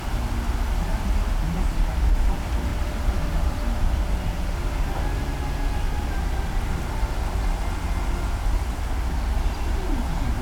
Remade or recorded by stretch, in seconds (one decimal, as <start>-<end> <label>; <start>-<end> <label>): 0.0-2.7 recorded; 2.7-4.6 remade; 4.6-10.4 recorded